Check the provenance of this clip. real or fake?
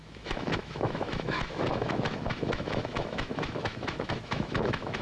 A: fake